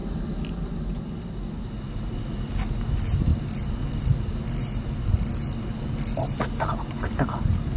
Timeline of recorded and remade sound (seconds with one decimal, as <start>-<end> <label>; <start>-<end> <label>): 0.0-7.8 recorded